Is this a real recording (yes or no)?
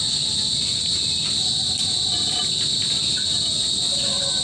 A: yes